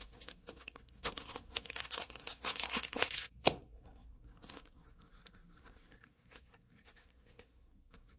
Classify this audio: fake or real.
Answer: fake